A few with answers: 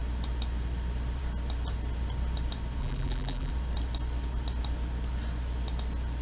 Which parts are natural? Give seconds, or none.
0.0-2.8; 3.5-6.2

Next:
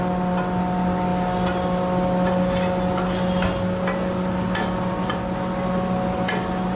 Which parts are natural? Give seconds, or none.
0.0-6.8

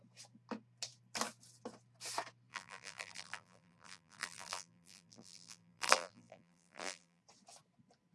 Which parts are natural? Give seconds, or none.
0.0-2.5; 7.2-8.1

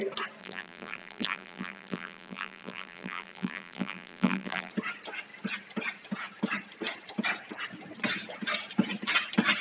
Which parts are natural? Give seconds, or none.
0.0-0.4; 4.7-9.6

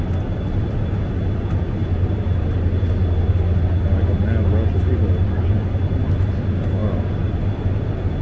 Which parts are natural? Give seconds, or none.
0.0-8.2

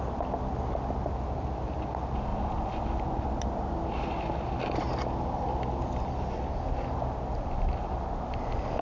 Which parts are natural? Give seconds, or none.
0.0-2.3; 3.7-8.8

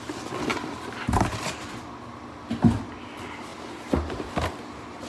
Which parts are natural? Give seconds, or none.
0.0-5.1